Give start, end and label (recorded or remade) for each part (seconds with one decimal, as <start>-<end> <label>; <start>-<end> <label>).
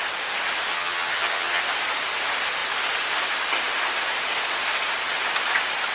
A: 0.0-0.7 recorded; 0.7-1.6 remade; 1.6-5.9 recorded